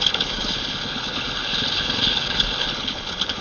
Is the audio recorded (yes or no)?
no